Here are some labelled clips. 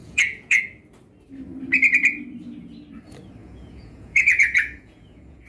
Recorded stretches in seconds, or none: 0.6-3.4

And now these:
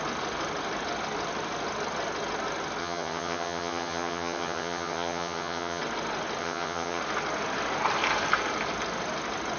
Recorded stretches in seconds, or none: 0.0-2.8; 5.8-6.4; 7.0-9.6